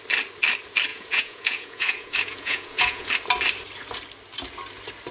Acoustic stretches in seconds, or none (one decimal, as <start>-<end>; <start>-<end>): 0.0-0.9; 3.1-5.1